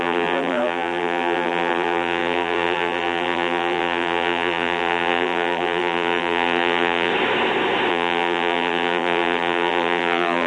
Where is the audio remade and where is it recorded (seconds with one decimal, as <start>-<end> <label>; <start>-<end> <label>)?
0.0-7.1 remade; 7.1-7.9 recorded; 7.9-10.5 remade